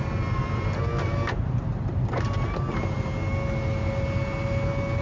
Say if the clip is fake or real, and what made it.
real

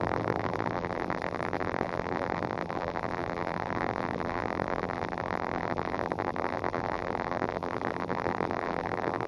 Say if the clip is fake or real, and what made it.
fake, vocoder, BigVGAN v2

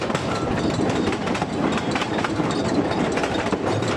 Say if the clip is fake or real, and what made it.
fake, vocoder, BigVGAN v2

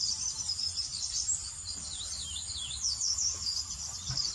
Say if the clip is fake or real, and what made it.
real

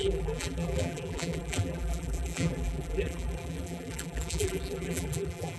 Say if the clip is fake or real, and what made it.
fake, vocoder, BigVGAN v2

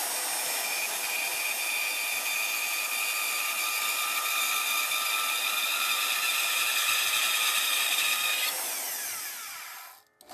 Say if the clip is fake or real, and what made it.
real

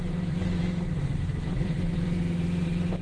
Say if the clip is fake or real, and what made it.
fake, vocoder, BigVGAN v2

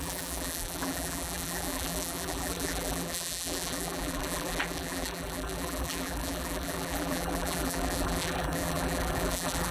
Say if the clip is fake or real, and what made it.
fake, vocoder, BigVGAN v2